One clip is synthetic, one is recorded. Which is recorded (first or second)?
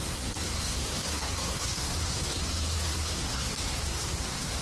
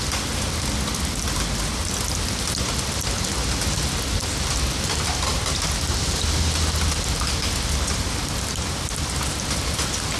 second